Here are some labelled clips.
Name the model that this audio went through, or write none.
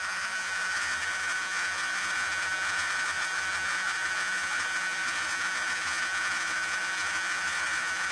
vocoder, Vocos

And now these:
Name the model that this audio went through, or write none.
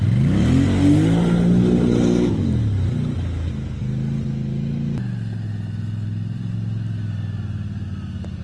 none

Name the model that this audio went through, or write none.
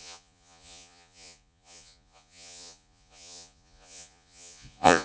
vocoder, Vocos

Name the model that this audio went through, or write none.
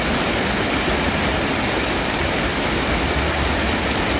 none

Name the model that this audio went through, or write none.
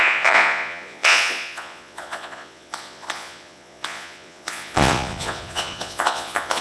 vocoder, Vocos